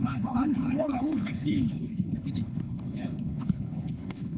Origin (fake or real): fake